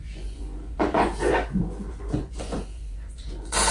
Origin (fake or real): fake